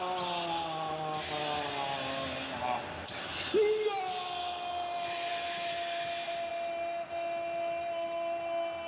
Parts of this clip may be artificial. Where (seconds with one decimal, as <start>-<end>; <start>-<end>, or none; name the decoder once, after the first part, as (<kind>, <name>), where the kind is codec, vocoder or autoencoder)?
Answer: none